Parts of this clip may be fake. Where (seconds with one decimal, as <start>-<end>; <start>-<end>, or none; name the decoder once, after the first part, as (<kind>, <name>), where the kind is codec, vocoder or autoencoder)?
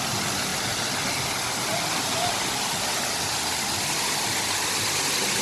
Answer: none